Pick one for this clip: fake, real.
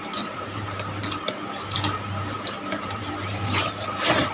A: fake